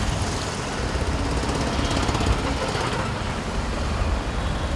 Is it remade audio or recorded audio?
recorded